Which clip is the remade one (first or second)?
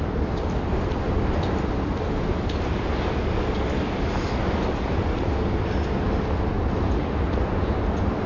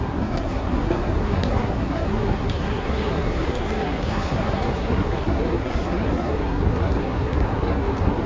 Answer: second